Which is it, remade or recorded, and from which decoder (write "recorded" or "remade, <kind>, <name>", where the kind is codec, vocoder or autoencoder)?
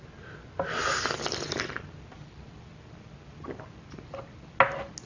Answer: recorded